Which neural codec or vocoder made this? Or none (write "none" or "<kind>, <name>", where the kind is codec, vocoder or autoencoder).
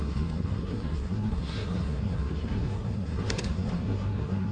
codec, SNAC